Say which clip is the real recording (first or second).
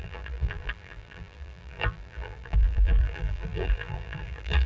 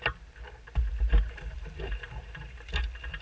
second